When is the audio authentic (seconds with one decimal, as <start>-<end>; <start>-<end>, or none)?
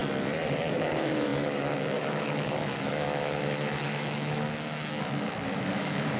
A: 0.0-0.6